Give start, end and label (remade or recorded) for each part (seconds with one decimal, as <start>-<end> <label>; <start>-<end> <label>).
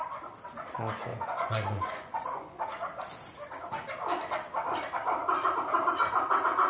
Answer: 0.0-1.1 recorded; 1.1-2.6 remade; 2.6-6.7 recorded